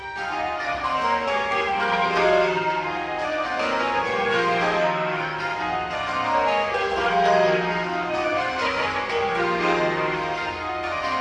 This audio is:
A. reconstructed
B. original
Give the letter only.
A